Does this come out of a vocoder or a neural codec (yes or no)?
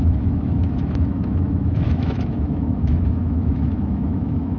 yes